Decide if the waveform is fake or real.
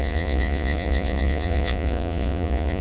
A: fake